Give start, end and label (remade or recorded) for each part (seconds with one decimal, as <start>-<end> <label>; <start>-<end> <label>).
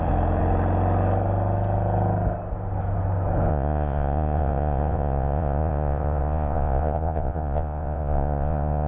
0.0-3.5 recorded; 3.5-8.9 remade